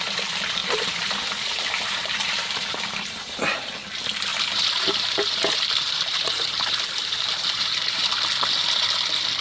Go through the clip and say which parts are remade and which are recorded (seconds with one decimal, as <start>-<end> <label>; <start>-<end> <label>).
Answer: 0.0-0.6 recorded; 0.6-3.4 remade; 3.4-4.3 recorded; 4.3-8.1 remade; 8.1-9.4 recorded